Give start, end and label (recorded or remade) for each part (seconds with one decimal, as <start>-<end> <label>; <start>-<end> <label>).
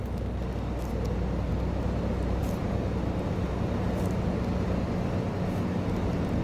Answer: 0.0-6.4 recorded